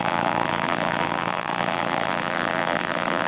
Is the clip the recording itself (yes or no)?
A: no